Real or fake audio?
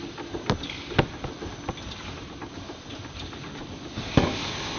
real